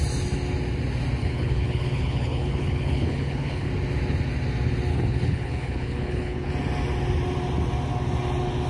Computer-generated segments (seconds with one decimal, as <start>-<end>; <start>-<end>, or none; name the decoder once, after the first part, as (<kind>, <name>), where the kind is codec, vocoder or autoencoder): 1.2-3.7 (codec, HILCodec); 4.9-6.5